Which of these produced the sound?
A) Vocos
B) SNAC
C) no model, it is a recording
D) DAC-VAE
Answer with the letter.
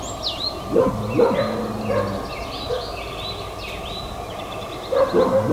C